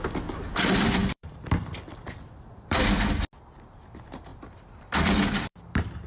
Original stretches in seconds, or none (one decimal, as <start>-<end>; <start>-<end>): 0.0-1.0; 2.8-4.3